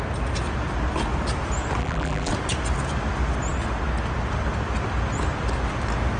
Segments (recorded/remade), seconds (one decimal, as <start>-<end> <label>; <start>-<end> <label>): 0.0-1.8 recorded; 1.8-2.3 remade; 2.3-6.2 recorded